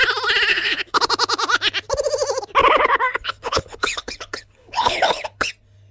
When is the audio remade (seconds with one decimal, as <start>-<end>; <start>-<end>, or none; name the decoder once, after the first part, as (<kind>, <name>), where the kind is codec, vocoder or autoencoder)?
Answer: 0.5-1.0 (codec, HILCodec); 2.6-5.5